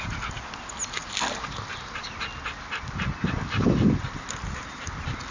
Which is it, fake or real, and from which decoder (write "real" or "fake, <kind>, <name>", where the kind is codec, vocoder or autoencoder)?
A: real